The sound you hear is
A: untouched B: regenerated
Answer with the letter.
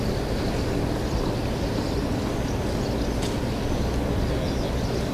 A